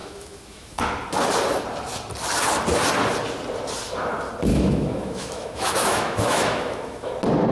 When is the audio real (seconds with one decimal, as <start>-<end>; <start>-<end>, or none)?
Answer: 0.8-4.5; 7.1-7.5